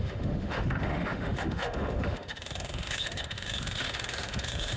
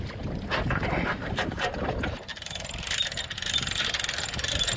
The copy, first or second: first